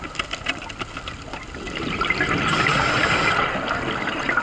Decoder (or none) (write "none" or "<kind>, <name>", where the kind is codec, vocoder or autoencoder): none